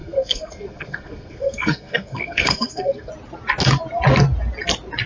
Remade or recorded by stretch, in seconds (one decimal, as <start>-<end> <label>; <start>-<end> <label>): 0.0-3.1 remade; 3.1-5.1 recorded